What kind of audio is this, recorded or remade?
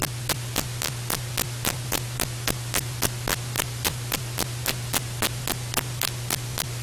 recorded